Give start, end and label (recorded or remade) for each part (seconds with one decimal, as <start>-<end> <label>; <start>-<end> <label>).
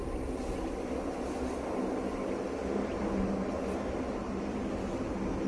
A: 0.0-5.5 recorded